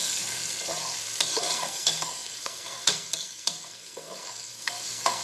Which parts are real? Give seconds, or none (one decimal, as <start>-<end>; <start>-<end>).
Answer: none